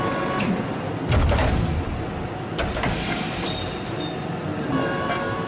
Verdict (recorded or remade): recorded